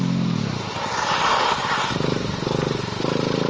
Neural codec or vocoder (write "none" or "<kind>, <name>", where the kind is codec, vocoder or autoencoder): vocoder, BigVGAN v2